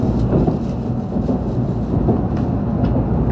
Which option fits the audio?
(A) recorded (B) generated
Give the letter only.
A